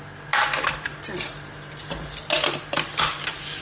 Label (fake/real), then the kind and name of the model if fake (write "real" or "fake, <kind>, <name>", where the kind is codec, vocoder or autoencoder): real